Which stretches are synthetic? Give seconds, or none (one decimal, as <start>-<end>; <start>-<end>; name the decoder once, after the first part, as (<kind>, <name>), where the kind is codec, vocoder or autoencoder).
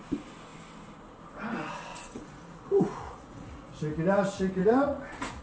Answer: 1.9-3.8 (vocoder, Vocos); 4.6-5.4